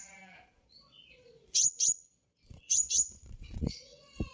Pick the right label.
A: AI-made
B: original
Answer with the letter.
A